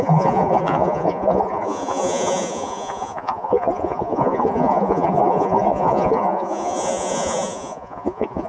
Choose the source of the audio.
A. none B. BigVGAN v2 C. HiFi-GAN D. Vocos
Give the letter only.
D